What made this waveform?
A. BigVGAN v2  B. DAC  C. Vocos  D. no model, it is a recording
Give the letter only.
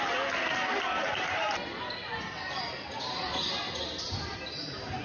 D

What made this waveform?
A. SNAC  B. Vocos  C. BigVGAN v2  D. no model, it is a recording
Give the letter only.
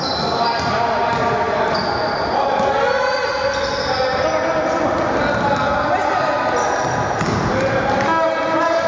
D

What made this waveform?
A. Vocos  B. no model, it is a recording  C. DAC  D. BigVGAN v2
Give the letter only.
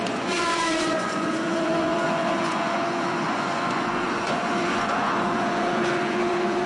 A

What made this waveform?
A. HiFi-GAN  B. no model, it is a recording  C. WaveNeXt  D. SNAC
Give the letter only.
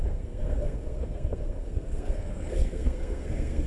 D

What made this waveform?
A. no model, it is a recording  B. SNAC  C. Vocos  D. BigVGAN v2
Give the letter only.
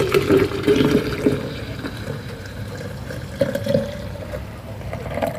D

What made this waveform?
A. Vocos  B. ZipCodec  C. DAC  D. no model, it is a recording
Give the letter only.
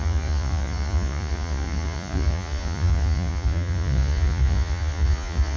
A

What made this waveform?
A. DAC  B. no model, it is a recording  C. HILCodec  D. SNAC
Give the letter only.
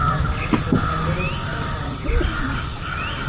B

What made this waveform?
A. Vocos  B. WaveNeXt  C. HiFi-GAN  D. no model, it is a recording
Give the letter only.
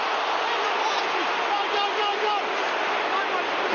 D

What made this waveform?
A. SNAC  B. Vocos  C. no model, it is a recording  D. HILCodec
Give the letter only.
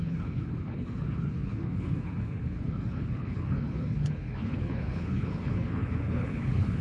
D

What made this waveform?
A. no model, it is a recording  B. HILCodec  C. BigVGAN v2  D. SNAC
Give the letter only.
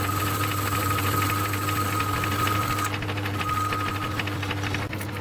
A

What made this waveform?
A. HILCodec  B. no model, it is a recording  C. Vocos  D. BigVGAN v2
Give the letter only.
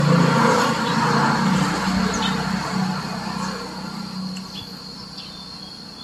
B